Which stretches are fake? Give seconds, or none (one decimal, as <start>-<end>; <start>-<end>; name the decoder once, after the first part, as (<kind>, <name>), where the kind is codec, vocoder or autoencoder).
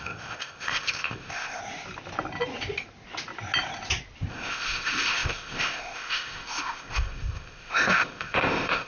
0.0-1.6 (codec, ZipCodec); 4.3-8.9